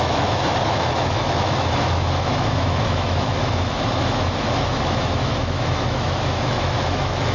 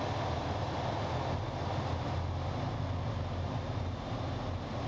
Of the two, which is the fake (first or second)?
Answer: first